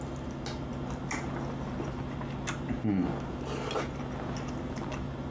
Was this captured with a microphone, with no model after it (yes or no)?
yes